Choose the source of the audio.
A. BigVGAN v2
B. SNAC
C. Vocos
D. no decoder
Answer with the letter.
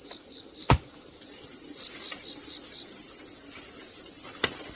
A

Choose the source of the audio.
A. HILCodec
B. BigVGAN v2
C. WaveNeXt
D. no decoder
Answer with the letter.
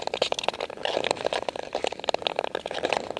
D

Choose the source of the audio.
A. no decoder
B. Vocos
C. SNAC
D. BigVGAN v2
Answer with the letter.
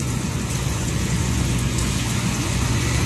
B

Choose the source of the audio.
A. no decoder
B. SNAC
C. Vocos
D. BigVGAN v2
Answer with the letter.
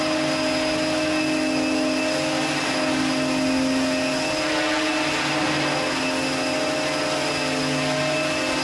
A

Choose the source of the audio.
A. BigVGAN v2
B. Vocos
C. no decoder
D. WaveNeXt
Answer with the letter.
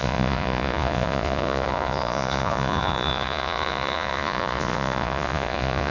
B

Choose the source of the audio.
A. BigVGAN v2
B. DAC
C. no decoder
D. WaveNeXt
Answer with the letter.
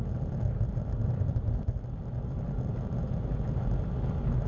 C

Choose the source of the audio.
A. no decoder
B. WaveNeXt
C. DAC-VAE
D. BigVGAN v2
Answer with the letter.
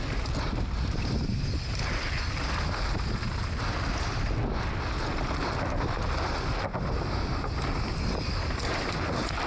A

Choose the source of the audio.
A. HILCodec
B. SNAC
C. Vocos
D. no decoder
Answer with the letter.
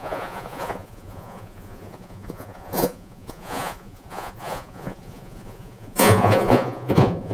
C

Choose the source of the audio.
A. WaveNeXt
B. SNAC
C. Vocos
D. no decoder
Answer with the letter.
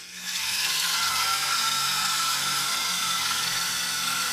B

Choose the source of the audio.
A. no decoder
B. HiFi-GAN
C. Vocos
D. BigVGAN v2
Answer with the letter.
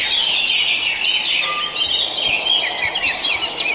A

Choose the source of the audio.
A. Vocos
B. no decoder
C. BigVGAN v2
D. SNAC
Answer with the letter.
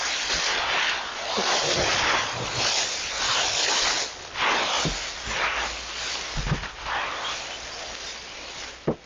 B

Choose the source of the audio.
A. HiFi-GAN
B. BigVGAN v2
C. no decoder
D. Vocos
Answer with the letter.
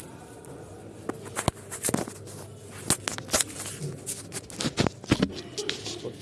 C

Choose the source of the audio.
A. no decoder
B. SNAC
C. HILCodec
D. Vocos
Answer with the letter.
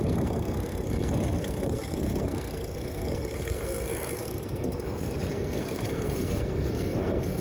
B